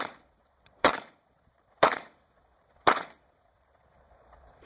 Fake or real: fake